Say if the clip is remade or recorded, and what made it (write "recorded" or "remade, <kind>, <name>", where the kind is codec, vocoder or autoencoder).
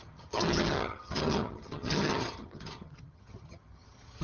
remade, vocoder, HiFi-GAN